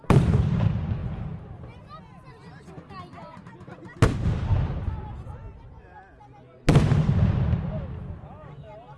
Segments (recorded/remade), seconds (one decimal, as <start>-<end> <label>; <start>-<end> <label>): 0.0-9.0 recorded